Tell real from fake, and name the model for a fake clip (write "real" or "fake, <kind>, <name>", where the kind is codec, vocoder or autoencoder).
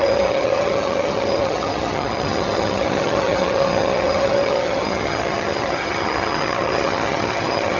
fake, vocoder, HiFi-GAN